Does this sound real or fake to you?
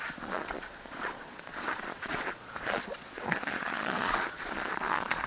fake